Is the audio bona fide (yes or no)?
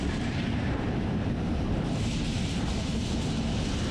no